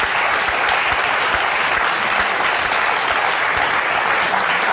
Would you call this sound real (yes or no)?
yes